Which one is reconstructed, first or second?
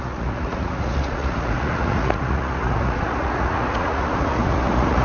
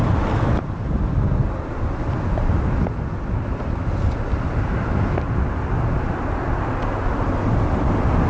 first